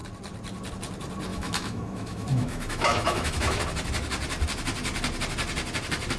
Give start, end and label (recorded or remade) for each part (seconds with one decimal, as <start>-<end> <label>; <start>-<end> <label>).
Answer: 0.0-1.3 recorded; 1.3-3.6 remade; 3.6-6.2 recorded